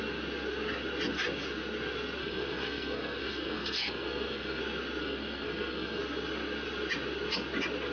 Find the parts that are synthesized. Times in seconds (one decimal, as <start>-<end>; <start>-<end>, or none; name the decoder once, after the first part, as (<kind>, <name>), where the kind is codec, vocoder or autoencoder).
2.2-4.6 (codec, SNAC); 5.0-6.0